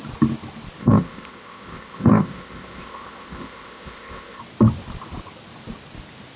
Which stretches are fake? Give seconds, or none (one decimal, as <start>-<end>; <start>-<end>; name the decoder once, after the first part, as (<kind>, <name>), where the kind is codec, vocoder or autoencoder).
0.8-4.4 (codec, ZipCodec)